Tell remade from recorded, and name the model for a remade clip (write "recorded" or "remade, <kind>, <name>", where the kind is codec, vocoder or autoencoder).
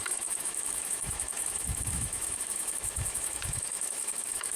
remade, autoencoder, DAC-VAE